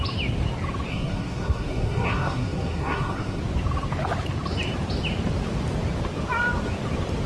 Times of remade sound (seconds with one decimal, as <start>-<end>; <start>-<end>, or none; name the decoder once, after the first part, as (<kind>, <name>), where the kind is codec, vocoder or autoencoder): 0.9-3.4 (codec, SNAC)